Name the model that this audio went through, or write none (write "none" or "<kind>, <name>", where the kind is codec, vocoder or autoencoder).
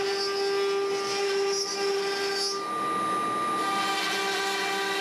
none